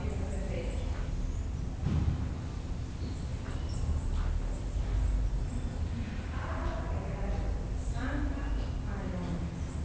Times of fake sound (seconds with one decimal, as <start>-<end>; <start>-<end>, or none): none